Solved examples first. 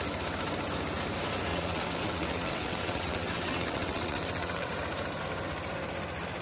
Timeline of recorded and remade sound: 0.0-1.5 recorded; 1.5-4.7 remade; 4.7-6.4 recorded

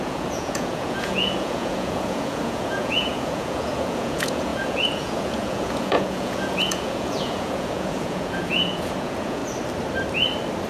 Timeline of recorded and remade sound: 0.0-9.4 remade; 9.4-10.7 recorded

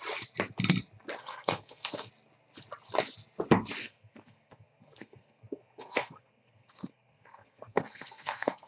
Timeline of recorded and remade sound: 0.0-1.2 recorded; 1.2-2.1 remade; 2.1-3.8 recorded; 3.8-8.7 remade

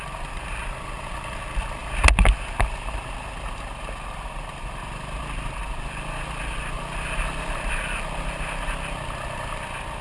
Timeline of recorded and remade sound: 0.0-10.0 recorded

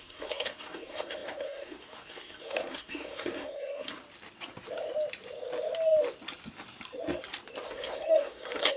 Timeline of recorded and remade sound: 0.0-4.0 remade; 4.0-7.7 recorded; 7.7-8.8 remade